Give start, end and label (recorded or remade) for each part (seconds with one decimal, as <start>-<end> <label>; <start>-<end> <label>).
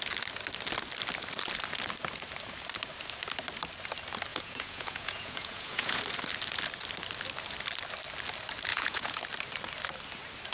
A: 0.0-4.3 recorded; 4.3-6.0 remade; 6.0-8.7 recorded; 8.7-9.2 remade; 9.2-10.5 recorded